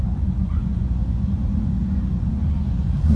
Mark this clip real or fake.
fake